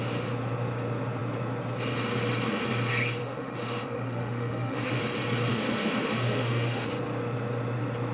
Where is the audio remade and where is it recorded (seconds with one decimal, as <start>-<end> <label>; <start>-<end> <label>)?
0.0-3.2 recorded; 3.2-5.0 remade; 5.0-5.5 recorded; 5.5-6.9 remade; 6.9-8.1 recorded